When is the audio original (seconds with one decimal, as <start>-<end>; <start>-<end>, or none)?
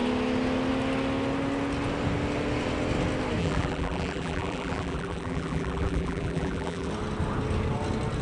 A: 0.0-3.4; 6.9-8.2